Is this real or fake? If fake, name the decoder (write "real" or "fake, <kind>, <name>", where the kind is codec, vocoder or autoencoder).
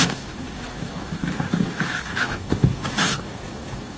fake, codec, DAC